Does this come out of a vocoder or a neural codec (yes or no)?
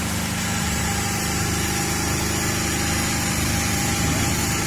no